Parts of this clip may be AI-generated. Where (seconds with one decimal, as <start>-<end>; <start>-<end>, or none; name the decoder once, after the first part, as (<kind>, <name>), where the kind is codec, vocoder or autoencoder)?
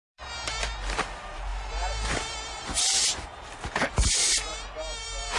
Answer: 0.0-3.3 (vocoder, BigVGAN v2); 3.9-4.5; 5.0-5.4